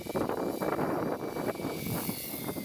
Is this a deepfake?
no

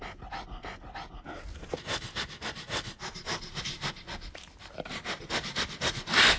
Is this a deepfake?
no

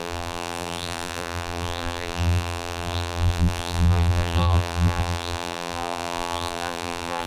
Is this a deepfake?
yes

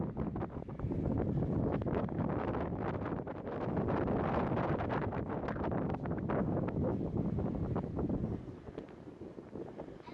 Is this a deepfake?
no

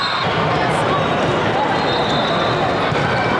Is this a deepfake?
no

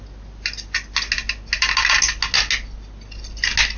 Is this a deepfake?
no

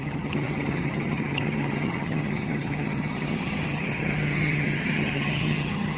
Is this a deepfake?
yes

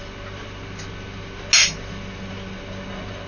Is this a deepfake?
no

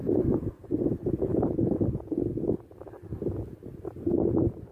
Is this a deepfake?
no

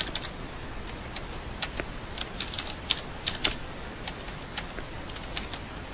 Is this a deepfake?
no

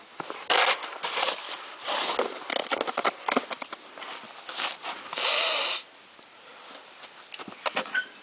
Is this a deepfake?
no